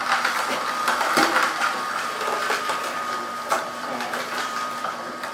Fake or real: fake